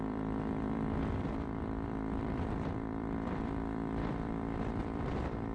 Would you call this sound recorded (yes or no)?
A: no